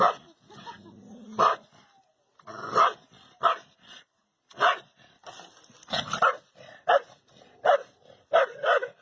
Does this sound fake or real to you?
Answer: real